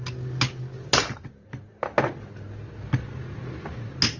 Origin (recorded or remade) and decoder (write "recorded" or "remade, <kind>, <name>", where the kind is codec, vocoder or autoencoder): recorded